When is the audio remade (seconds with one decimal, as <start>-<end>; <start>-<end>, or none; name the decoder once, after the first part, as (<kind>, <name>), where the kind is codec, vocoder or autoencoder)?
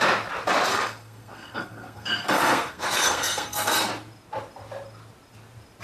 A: 0.7-3.9 (codec, SNAC)